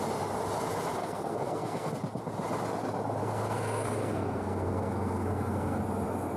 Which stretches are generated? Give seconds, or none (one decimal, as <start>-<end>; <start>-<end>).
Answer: 1.0-1.9; 3.2-5.8